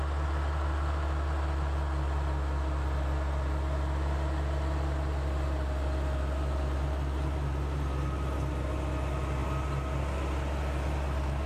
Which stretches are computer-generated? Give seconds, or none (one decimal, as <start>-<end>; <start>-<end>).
none